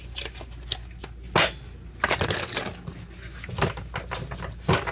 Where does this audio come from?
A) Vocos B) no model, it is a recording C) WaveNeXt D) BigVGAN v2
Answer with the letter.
B